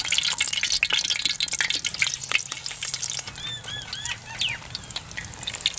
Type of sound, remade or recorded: recorded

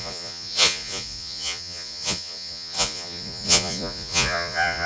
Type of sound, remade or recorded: remade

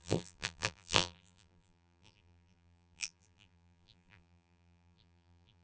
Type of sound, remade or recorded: remade